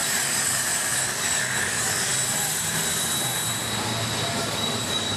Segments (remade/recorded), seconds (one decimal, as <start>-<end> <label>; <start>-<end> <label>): 0.0-2.1 remade; 2.1-4.4 recorded; 4.4-5.2 remade

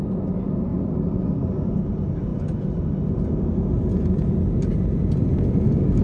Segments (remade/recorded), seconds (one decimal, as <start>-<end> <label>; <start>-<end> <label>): 0.0-6.0 recorded

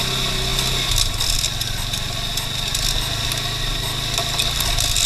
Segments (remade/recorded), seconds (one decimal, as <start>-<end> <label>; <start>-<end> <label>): 0.0-5.1 recorded

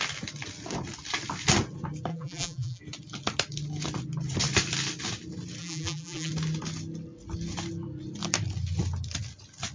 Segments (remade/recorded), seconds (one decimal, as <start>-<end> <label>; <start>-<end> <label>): 0.0-2.1 recorded; 2.1-2.8 remade; 2.8-5.6 recorded; 5.6-6.3 remade; 6.3-9.7 recorded

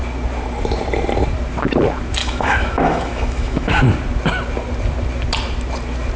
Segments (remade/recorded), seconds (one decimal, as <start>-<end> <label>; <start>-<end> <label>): 0.0-2.2 recorded; 2.2-3.8 remade; 3.8-6.2 recorded

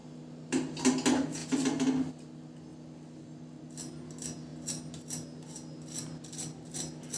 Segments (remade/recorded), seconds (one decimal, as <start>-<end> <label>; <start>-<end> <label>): 0.0-0.8 remade; 0.8-1.4 recorded; 1.4-2.1 remade; 2.1-2.7 recorded; 2.7-3.2 remade; 3.2-7.2 recorded

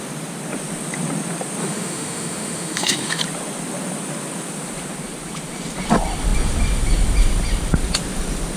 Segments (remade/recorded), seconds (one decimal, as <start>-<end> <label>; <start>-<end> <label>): 0.0-1.6 recorded; 1.6-3.2 remade; 3.2-8.6 recorded

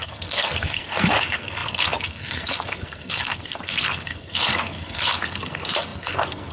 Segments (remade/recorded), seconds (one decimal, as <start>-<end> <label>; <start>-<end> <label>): 0.0-6.5 remade